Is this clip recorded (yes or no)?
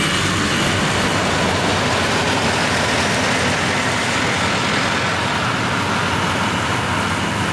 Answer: yes